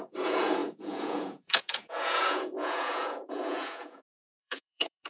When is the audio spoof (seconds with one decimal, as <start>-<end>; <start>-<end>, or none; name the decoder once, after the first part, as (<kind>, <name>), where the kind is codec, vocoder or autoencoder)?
0.0-5.1 (vocoder, Vocos)